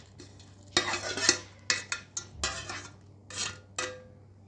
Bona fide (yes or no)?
yes